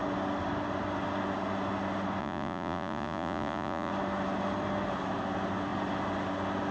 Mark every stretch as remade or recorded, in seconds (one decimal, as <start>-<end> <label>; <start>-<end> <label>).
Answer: 0.0-2.2 recorded; 2.2-3.9 remade; 3.9-6.7 recorded